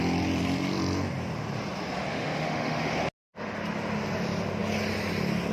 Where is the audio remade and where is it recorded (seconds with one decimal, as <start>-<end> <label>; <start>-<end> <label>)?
0.0-2.1 recorded; 2.1-2.9 remade; 2.9-5.5 recorded